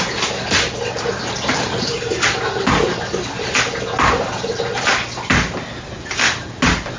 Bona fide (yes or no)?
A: yes